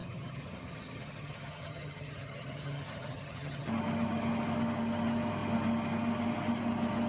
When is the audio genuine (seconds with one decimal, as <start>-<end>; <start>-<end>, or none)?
3.7-7.1